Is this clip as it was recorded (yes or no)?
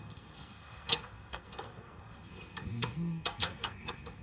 no